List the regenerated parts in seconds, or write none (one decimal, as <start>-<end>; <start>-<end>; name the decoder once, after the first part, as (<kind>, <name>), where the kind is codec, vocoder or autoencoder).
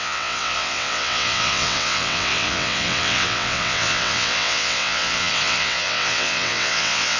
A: 0.0-7.2 (vocoder, WaveNeXt)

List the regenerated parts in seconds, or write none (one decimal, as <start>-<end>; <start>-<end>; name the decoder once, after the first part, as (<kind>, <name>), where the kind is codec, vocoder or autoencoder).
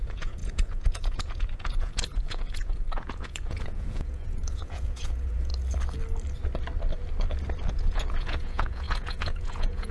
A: 0.0-5.5 (vocoder, Vocos); 7.7-9.9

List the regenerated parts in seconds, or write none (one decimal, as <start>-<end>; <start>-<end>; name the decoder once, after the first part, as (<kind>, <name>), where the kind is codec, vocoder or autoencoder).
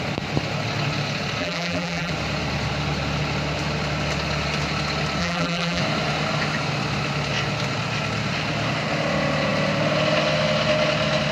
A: 1.4-2.1 (vocoder, BigVGAN v2); 5.2-5.8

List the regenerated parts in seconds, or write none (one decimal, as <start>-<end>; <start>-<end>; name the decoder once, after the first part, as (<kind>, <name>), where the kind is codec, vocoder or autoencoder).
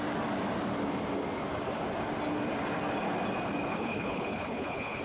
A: 3.7-5.0 (codec, HILCodec)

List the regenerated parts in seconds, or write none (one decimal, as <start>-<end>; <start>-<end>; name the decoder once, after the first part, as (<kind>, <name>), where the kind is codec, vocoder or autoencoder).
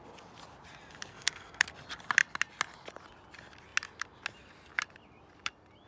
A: 1.1-1.7 (codec, SNAC)